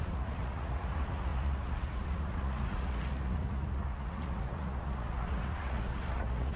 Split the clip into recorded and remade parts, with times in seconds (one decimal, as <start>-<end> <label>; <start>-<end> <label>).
0.0-6.6 remade